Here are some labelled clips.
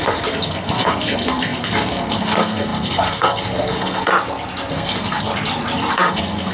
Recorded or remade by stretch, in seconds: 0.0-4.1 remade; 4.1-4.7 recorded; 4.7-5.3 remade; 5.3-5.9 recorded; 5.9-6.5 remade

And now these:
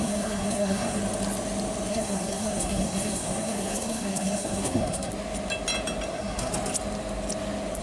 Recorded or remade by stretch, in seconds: 0.0-1.0 remade; 1.0-1.9 recorded; 1.9-5.1 remade; 5.1-6.1 recorded; 6.1-6.5 remade; 6.5-7.8 recorded